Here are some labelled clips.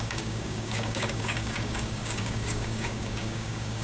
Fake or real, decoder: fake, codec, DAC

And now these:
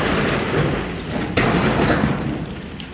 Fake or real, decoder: real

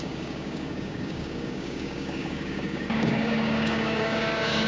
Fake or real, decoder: fake, codec, DAC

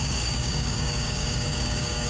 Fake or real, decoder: fake, codec, DAC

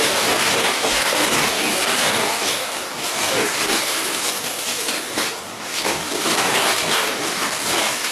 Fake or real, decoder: fake, codec, DAC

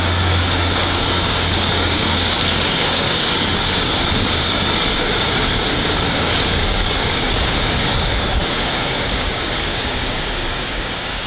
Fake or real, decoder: fake, codec, DAC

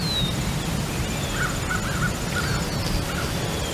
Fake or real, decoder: real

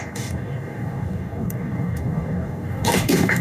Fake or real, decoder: fake, codec, DAC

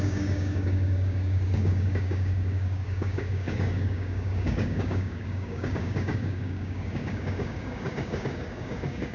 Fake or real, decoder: fake, codec, DAC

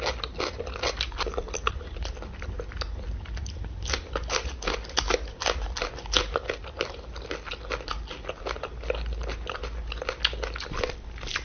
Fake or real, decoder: real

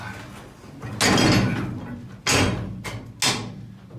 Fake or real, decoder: real